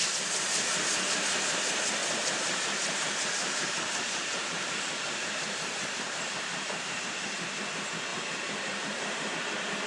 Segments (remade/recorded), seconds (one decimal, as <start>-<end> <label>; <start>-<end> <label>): 0.0-2.0 recorded; 2.0-7.1 remade; 7.1-8.1 recorded; 8.1-9.3 remade; 9.3-9.9 recorded